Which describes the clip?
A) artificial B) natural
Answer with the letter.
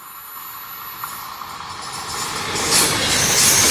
B